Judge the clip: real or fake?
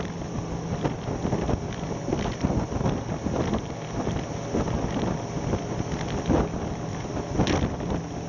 real